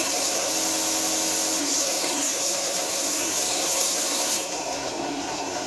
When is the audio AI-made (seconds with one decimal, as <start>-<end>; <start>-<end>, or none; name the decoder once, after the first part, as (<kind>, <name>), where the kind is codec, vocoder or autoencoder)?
0.0-0.5 (codec, SNAC); 1.6-5.7